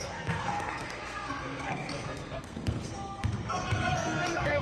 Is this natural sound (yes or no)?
no